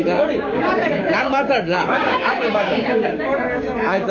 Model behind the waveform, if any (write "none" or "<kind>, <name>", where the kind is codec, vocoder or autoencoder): codec, DAC